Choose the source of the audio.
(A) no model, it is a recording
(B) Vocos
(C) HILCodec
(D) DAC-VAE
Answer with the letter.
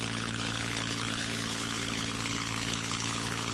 C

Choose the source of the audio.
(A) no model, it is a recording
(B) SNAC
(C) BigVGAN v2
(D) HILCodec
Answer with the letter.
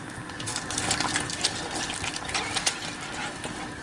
A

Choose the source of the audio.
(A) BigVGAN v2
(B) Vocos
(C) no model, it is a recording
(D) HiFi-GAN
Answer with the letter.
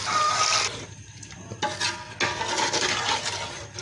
C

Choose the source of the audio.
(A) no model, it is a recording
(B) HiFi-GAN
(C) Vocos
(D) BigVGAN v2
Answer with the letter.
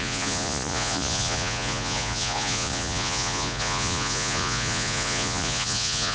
C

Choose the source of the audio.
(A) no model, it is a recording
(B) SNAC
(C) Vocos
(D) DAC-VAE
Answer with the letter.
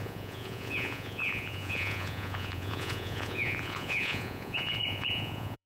C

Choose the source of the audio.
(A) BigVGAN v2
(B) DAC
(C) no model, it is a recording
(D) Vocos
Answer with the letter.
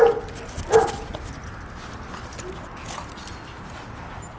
C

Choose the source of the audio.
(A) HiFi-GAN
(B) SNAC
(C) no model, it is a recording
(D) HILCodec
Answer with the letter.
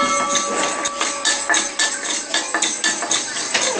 C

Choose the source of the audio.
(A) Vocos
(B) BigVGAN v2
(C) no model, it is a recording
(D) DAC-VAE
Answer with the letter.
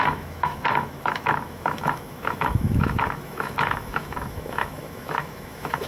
D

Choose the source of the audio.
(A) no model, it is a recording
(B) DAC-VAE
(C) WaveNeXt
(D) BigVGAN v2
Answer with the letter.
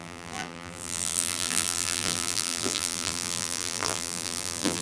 D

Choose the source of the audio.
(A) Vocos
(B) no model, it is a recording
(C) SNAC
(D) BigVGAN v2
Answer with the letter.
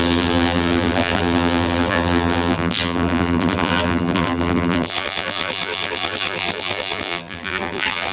D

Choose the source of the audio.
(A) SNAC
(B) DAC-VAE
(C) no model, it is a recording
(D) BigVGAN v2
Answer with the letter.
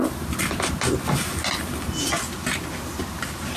C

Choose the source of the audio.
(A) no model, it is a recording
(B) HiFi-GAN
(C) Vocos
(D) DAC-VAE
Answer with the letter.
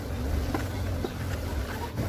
A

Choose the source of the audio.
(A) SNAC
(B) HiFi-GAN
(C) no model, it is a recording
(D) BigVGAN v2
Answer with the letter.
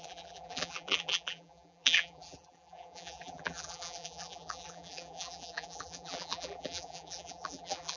D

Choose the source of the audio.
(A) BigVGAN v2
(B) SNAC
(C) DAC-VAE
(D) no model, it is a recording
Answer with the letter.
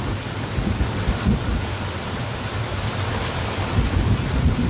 D